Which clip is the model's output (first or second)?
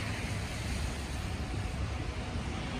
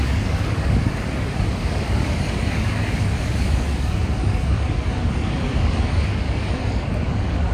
second